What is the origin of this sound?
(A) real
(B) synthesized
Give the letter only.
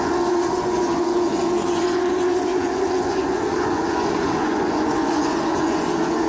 B